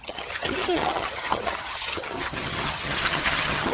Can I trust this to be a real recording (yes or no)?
no